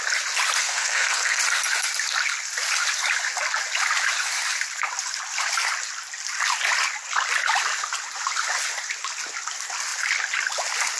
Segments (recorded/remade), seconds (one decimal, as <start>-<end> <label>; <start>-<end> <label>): 0.0-0.6 recorded; 0.6-1.4 remade; 1.4-11.0 recorded